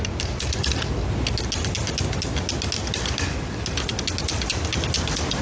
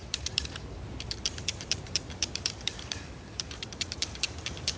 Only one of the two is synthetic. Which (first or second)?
second